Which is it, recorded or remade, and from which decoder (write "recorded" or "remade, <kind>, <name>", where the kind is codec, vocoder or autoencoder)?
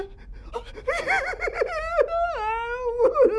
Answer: recorded